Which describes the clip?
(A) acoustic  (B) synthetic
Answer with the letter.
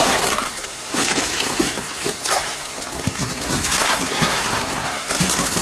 B